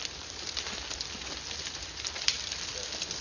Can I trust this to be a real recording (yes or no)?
yes